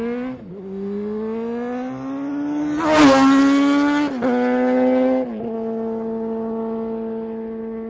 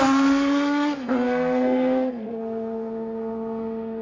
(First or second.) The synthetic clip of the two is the second